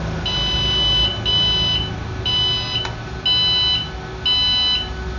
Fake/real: real